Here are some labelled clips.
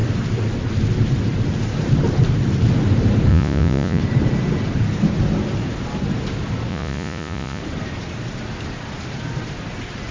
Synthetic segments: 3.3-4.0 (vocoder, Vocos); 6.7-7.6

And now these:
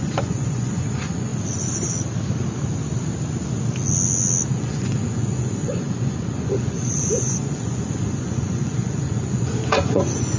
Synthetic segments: 0.0-1.3 (vocoder, Vocos); 4.5-10.4

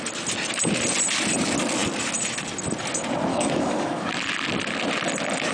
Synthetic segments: 3.3-4.1 (codec, DAC)

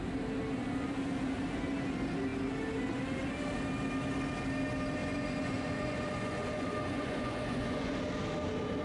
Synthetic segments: 5.0-8.0 (vocoder, Vocos)

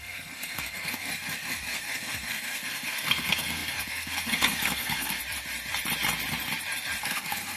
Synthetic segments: 0.0-5.2 (codec, SNAC); 7.0-7.6